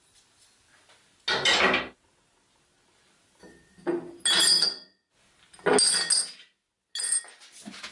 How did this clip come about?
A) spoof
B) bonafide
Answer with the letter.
B